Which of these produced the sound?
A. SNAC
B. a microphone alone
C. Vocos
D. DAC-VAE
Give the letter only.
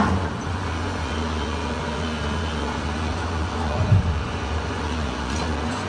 C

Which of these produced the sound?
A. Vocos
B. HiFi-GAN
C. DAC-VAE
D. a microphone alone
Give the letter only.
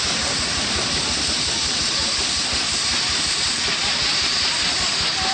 D